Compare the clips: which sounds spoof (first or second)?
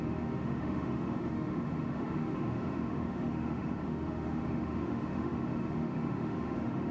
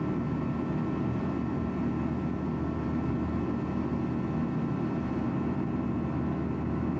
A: first